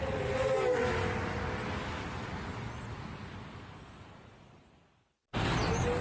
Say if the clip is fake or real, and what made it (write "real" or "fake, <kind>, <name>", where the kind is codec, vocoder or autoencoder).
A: real